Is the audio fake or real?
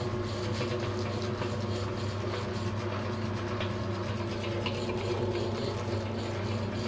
real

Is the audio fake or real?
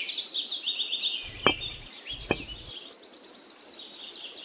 real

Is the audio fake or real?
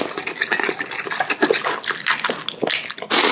real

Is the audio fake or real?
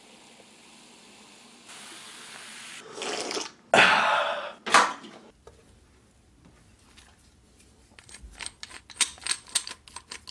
real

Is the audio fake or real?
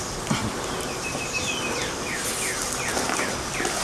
real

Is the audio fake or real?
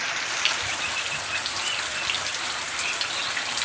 real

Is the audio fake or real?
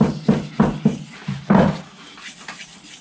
real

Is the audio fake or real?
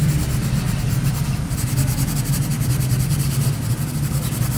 real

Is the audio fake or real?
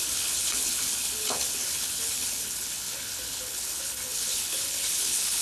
fake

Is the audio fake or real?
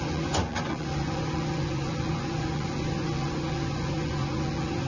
fake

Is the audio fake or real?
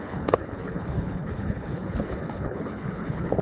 fake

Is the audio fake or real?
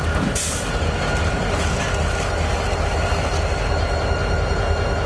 real